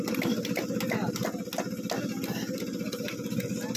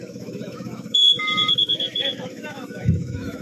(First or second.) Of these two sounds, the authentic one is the first